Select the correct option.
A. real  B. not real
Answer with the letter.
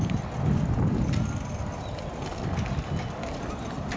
A